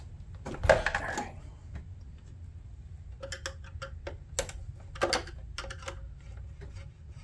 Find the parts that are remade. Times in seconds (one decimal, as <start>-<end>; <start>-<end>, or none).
none